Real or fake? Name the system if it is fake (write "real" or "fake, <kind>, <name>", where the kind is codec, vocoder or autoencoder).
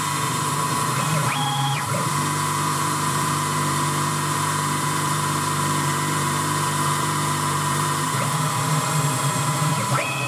fake, vocoder, BigVGAN v2